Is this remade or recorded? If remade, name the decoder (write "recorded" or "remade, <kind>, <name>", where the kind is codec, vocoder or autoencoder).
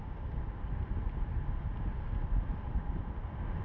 recorded